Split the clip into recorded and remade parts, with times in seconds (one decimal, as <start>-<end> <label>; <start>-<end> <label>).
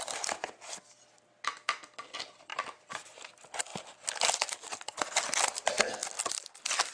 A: 0.0-2.5 recorded; 2.5-3.3 remade; 3.3-6.9 recorded